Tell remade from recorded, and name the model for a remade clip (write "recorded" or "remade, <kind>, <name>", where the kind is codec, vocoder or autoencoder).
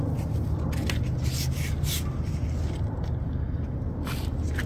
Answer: recorded